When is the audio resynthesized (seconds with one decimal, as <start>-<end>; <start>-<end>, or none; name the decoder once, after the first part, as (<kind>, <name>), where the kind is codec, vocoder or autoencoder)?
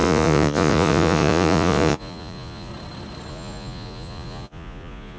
0.0-2.7 (vocoder, Vocos); 3.3-5.2